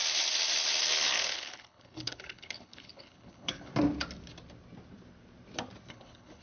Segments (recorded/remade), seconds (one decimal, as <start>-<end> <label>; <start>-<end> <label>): 0.0-1.2 recorded; 1.2-3.7 remade; 3.7-5.9 recorded; 5.9-6.4 remade